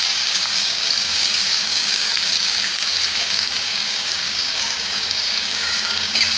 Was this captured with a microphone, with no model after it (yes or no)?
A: no